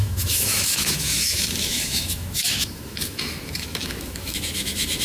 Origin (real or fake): fake